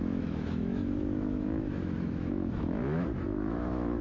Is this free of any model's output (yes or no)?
no